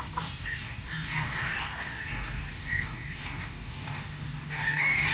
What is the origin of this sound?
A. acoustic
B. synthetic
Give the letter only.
B